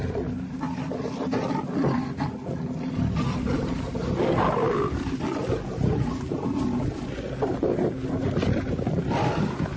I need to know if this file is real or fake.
real